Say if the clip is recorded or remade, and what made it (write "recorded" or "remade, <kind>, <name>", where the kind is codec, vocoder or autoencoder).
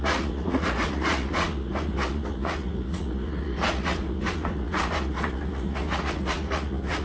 remade, vocoder, Vocos